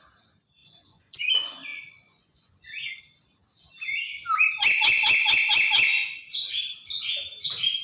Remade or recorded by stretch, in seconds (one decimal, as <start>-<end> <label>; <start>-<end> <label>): 0.0-0.6 recorded; 0.6-1.2 remade; 1.2-1.7 recorded; 1.7-3.0 remade; 3.0-7.8 recorded